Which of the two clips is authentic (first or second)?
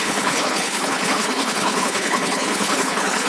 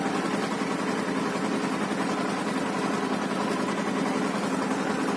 second